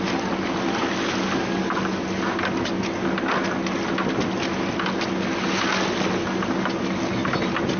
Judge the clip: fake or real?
real